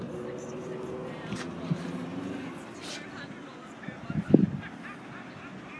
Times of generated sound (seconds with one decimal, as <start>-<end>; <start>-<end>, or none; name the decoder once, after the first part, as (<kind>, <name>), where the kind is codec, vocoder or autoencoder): none